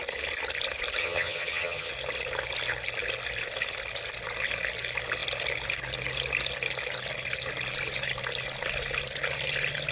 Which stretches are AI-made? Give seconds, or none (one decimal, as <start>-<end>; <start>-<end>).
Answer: 1.0-1.9